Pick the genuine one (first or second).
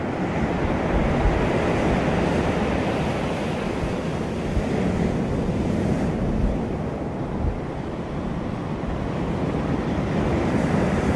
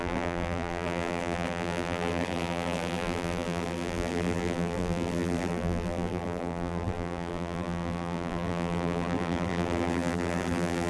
first